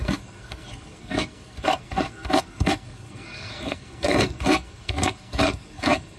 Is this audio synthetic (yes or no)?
yes